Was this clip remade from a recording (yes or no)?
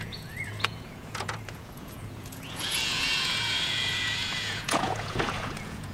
yes